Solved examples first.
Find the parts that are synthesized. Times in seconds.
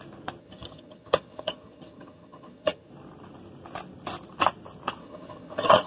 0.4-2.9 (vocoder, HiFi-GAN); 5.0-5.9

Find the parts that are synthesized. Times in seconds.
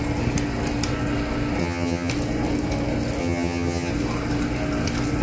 1.6-2.1 (vocoder, HiFi-GAN); 3.2-3.9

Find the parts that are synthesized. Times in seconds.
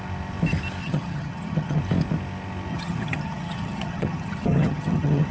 0.8-1.8 (vocoder, HiFi-GAN); 2.7-5.3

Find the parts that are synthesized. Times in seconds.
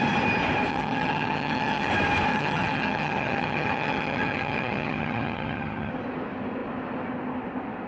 0.7-1.9 (vocoder, HiFi-GAN); 2.3-5.9